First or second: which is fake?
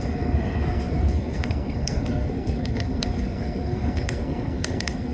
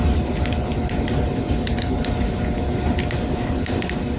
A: first